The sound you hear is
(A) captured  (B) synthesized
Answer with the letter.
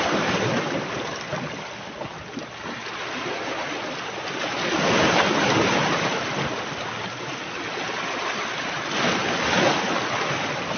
A